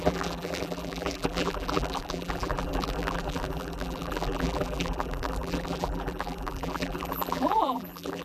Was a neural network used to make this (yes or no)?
yes